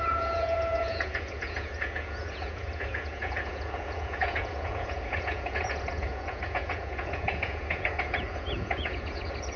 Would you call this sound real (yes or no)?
no